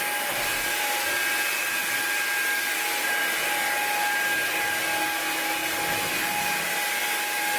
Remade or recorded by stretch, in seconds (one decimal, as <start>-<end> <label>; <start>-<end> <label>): 0.0-7.6 recorded